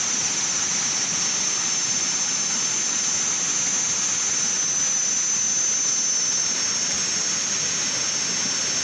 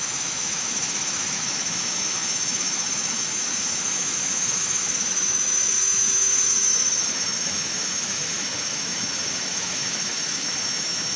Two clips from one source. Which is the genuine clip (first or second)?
first